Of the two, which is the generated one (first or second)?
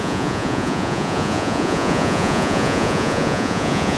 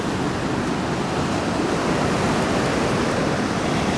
first